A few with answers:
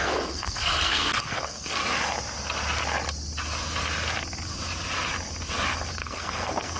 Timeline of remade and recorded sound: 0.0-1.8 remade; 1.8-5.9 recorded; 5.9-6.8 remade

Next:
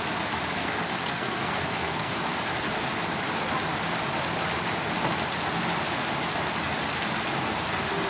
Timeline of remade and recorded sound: 0.0-0.6 recorded; 0.6-2.1 remade; 2.1-8.1 recorded

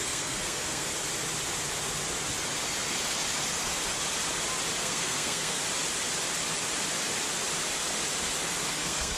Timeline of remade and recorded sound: 0.0-0.9 remade; 0.9-4.8 recorded; 4.8-5.6 remade; 5.6-8.7 recorded; 8.7-9.2 remade

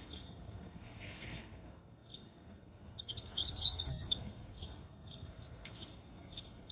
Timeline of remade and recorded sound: 0.0-6.7 remade